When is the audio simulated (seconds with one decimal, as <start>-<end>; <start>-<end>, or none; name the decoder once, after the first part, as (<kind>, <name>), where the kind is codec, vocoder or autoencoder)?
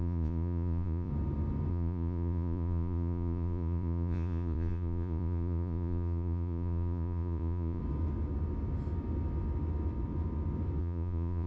0.0-1.1 (vocoder, Vocos); 1.7-7.8; 10.8-11.5